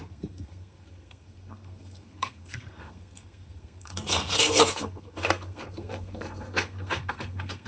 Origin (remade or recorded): remade